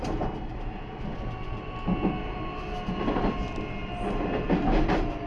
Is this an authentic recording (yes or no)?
yes